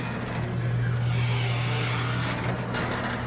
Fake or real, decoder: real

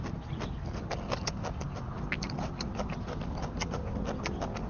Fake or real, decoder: real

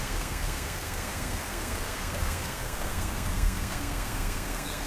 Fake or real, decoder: fake, codec, SNAC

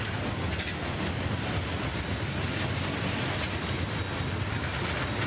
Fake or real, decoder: real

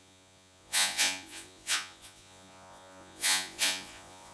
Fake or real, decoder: fake, vocoder, Vocos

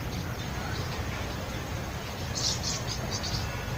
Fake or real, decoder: real